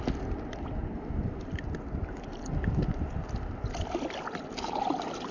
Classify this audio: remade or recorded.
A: recorded